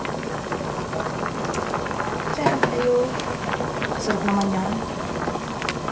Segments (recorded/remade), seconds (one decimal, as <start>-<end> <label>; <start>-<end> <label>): 0.0-2.3 recorded; 2.3-3.5 remade; 3.5-5.9 recorded